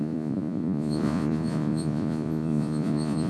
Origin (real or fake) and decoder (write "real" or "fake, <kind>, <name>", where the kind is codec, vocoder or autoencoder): fake, vocoder, Vocos